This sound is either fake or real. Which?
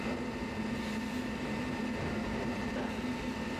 real